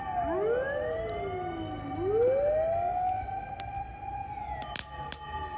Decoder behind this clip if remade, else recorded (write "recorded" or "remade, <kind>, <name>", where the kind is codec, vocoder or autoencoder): recorded